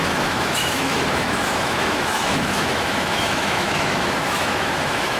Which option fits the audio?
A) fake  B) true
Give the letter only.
A